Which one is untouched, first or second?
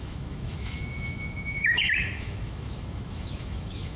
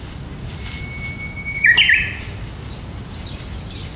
second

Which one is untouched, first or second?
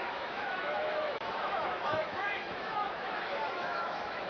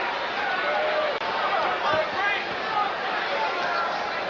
second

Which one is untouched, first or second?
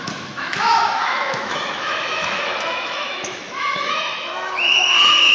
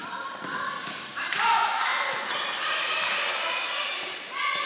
second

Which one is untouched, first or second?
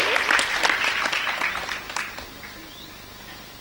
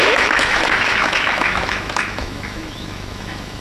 first